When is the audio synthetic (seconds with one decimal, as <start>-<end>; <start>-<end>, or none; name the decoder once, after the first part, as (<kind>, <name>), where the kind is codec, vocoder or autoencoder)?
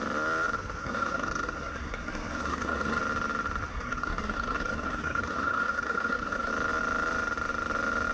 0.8-3.0 (codec, SNAC); 3.7-6.5